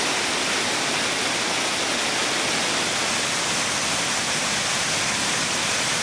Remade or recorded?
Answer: recorded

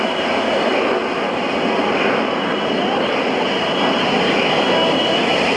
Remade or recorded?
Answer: recorded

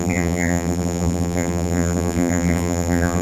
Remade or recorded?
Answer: remade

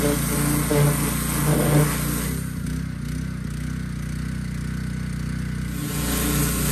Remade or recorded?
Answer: recorded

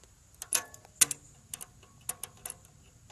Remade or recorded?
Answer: recorded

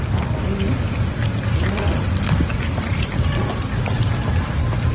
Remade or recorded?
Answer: recorded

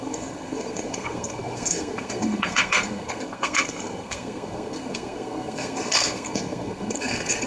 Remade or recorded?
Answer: remade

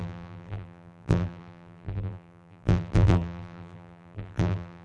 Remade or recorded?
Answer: remade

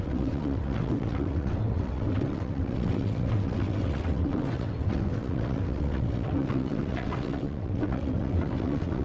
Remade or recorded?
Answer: remade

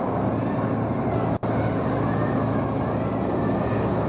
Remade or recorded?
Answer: recorded